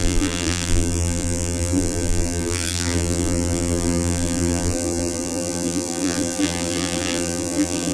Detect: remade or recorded remade